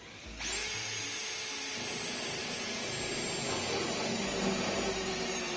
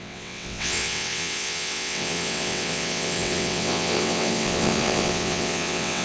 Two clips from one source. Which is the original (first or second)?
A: first